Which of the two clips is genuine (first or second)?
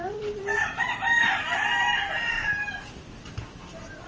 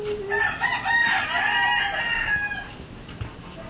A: second